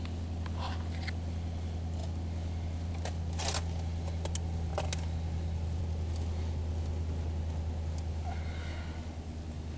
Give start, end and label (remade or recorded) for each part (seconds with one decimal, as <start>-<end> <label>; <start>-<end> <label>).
0.0-9.8 recorded

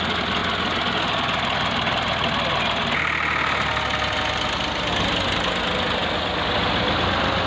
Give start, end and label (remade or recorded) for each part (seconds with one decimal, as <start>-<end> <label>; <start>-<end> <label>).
0.0-7.5 recorded

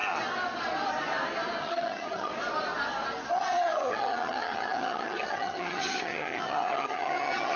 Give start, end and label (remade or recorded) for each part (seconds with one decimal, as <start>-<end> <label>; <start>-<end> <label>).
0.0-1.6 recorded; 1.6-2.3 remade; 2.3-3.3 recorded; 3.3-7.6 remade

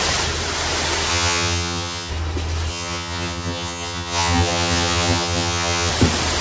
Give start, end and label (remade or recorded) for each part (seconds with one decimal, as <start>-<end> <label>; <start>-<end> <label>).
0.0-1.1 recorded; 1.1-2.1 remade; 2.1-2.7 recorded; 2.7-5.9 remade; 5.9-6.4 recorded